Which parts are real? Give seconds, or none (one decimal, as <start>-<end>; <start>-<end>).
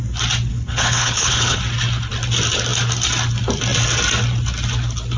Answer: 0.0-0.5; 1.6-5.2